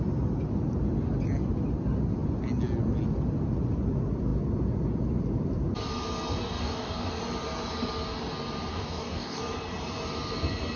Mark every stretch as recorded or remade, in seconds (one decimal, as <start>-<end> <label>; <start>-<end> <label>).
0.0-6.6 recorded; 6.6-7.1 remade; 7.1-8.7 recorded; 8.7-9.4 remade; 9.4-10.8 recorded